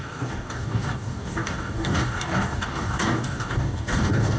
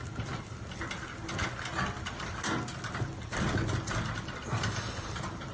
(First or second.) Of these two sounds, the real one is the second